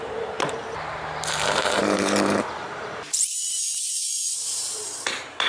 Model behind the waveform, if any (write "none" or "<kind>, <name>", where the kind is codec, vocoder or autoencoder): vocoder, BigVGAN v2